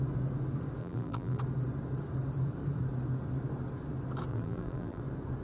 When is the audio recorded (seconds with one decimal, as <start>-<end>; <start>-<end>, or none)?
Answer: 0.0-0.8; 1.4-4.3; 5.0-5.4